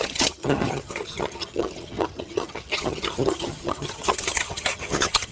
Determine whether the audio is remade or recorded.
remade